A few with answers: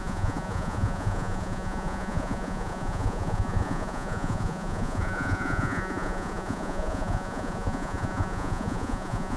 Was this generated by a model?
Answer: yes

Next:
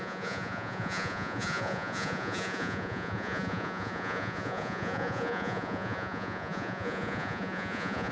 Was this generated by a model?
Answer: yes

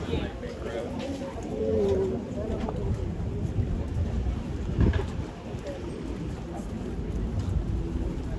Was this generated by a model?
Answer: no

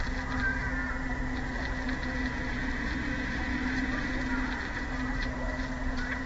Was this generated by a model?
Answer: no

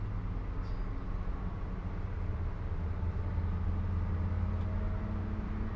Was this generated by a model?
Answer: no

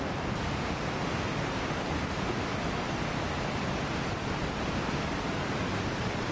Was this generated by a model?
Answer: no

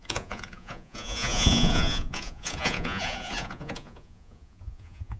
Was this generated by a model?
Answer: yes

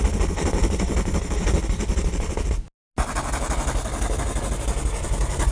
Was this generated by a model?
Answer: no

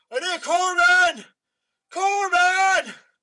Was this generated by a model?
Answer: yes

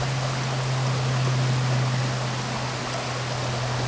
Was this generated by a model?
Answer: no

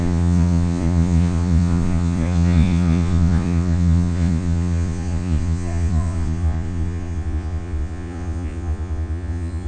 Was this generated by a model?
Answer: yes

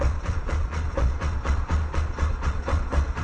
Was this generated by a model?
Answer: yes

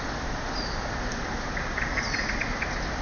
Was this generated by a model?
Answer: no